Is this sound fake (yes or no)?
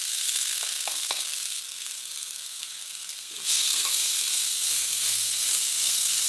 yes